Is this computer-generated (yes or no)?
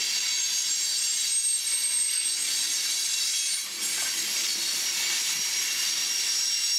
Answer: no